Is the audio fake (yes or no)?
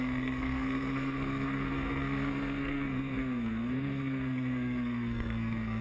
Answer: yes